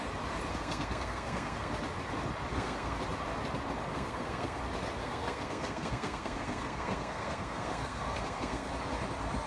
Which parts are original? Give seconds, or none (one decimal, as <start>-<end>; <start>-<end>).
0.0-0.5; 1.7-2.5; 3.0-3.9; 4.6-5.0; 8.7-9.5